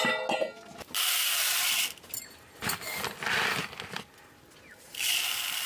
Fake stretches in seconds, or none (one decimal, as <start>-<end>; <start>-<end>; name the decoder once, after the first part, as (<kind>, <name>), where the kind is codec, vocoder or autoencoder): none